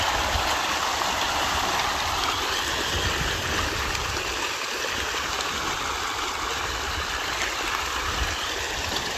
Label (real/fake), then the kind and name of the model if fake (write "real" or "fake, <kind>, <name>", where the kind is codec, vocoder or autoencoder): real